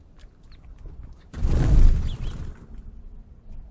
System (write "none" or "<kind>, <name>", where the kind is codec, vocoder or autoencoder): none